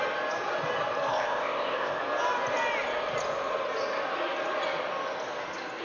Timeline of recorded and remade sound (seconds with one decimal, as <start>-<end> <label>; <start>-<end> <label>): 0.0-1.1 recorded; 1.1-2.0 remade; 2.0-5.8 recorded